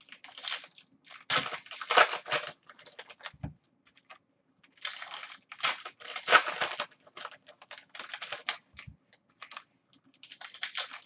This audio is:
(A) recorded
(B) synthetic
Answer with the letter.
A